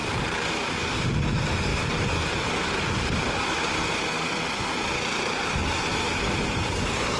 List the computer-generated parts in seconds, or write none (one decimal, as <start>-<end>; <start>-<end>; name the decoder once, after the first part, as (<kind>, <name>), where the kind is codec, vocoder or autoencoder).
5.6-7.2 (vocoder, BigVGAN v2)